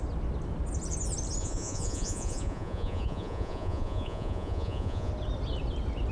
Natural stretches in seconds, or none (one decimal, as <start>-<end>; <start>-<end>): 0.0-1.4; 5.1-6.1

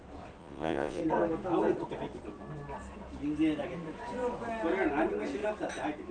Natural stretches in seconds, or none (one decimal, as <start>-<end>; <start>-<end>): 0.0-0.4; 1.0-6.1

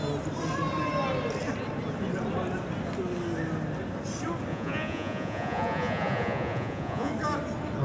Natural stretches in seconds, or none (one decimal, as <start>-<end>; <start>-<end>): 0.0-4.5; 7.1-7.8

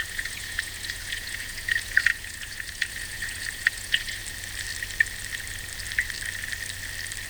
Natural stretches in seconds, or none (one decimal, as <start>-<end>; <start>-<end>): 4.2-7.3

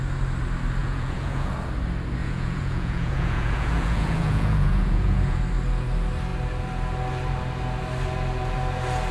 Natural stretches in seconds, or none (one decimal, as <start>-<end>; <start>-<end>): 0.0-0.8; 1.5-2.2; 5.4-9.1

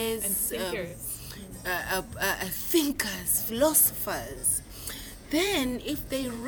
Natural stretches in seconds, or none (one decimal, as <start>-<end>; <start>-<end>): 0.9-3.5